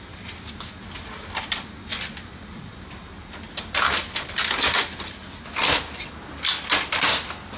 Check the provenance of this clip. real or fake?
real